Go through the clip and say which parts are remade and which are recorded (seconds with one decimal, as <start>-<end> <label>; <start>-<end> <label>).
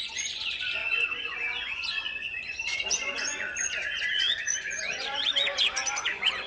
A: 0.0-6.5 remade